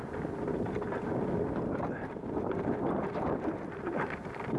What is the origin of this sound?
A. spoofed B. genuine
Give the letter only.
B